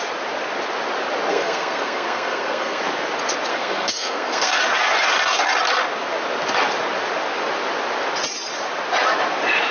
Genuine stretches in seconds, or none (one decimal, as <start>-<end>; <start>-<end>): 0.0-1.3; 2.8-3.5; 4.6-9.7